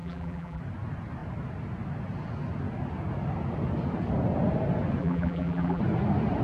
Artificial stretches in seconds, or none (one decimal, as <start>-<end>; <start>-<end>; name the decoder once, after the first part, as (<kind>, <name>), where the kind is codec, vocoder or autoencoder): 0.0-0.6 (vocoder, BigVGAN v2); 5.0-5.8